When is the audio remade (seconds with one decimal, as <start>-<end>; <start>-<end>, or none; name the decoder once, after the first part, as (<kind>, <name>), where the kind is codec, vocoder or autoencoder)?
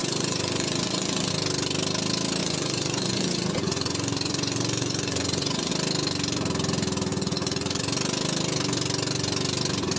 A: 0.0-1.3 (vocoder, Vocos); 2.4-5.7; 7.1-7.8